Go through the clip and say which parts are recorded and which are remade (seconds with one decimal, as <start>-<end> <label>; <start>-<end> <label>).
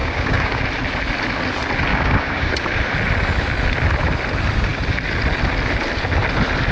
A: 0.0-0.6 remade; 0.6-1.9 recorded; 1.9-2.5 remade; 2.5-6.7 recorded